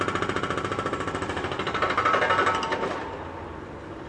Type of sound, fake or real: real